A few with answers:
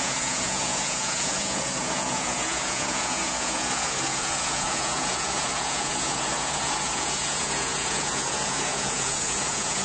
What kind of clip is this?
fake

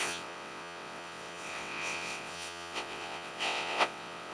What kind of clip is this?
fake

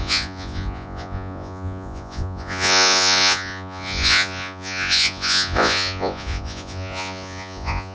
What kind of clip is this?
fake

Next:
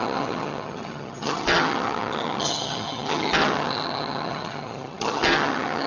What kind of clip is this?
fake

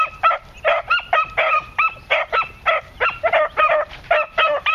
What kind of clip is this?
real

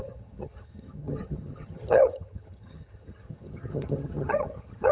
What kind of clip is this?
fake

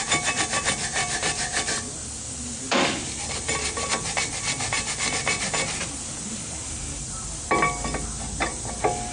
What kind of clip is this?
real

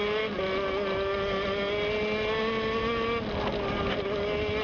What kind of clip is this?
real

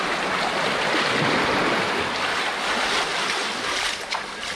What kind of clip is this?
real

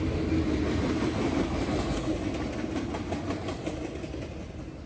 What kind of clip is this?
real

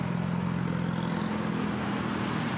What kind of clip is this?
real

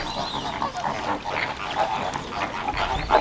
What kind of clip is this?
real